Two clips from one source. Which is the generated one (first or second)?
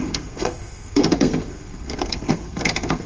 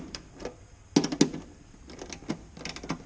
first